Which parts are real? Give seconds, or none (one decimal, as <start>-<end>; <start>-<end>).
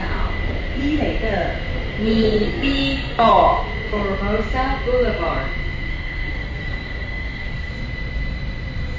0.0-2.1; 3.3-5.9; 7.7-9.0